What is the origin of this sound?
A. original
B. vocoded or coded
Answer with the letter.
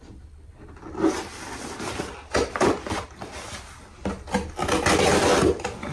A